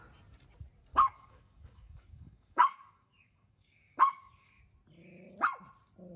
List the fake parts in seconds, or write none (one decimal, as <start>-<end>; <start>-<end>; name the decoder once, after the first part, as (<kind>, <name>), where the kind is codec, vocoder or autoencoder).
0.9-4.6 (codec, DAC)